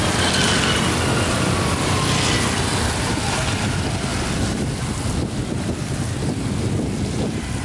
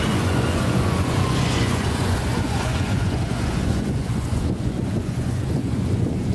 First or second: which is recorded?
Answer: first